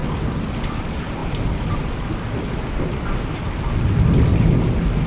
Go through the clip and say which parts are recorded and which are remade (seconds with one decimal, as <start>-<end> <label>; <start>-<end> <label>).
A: 0.0-5.1 recorded